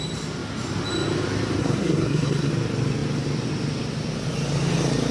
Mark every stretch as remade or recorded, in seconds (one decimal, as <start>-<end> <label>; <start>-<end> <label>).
0.0-1.6 recorded; 1.6-2.5 remade; 2.5-5.1 recorded